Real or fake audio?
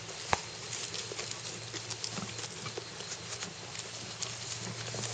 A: real